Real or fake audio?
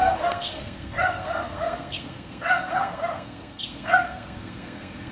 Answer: fake